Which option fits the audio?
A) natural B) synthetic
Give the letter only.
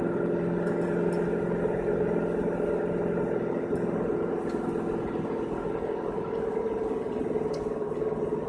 A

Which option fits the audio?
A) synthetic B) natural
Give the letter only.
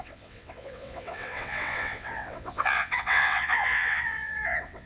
A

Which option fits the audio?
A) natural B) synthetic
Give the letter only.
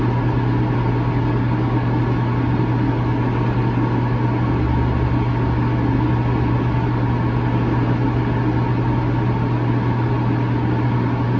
A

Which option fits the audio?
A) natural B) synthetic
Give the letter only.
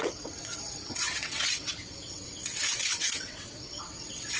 B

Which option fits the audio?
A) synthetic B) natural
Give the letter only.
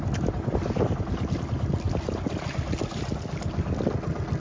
B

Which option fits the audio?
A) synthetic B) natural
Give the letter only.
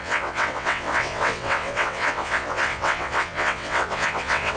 A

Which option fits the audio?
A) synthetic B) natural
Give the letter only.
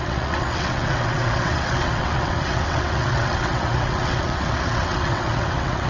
A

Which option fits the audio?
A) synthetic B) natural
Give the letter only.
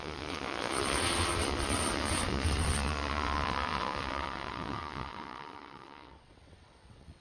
A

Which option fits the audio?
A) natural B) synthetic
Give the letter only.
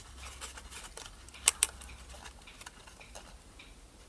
A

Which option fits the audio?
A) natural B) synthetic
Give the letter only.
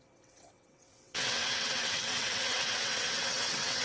B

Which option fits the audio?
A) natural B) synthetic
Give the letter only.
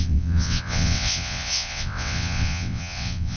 B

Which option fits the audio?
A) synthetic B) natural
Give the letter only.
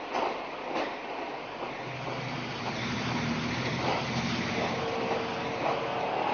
B